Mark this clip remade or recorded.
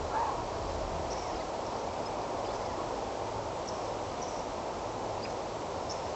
recorded